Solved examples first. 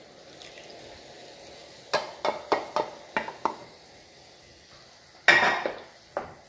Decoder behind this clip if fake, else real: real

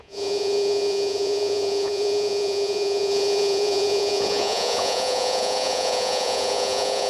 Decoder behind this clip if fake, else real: fake, vocoder, Vocos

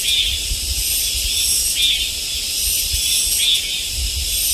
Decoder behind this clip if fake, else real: real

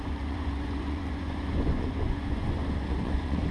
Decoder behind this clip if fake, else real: fake, vocoder, Vocos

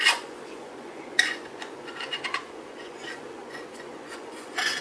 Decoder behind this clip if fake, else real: fake, vocoder, Vocos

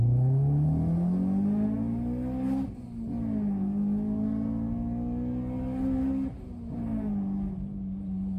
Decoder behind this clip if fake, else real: real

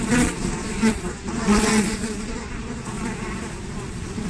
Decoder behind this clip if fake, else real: fake, vocoder, Vocos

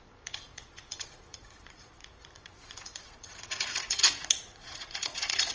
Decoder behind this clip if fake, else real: fake, vocoder, Vocos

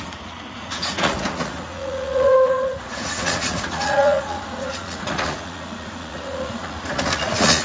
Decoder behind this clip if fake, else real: fake, vocoder, Vocos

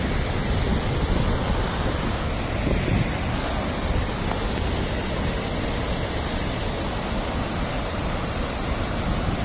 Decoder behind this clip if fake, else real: real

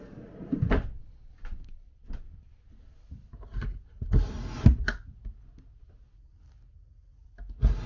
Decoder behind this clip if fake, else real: real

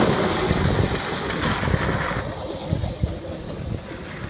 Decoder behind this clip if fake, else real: real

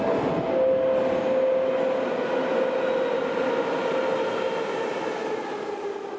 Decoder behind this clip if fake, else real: real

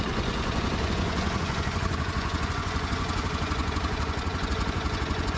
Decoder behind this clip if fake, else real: fake, vocoder, Vocos